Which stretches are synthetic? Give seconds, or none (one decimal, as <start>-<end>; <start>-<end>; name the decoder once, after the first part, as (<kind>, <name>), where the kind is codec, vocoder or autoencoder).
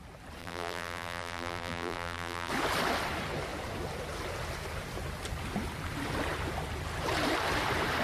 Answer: 0.4-2.5 (vocoder, BigVGAN v2)